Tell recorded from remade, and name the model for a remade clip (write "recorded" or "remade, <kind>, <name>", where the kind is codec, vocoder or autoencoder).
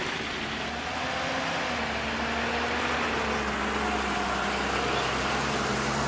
recorded